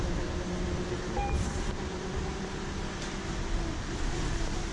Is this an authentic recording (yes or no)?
yes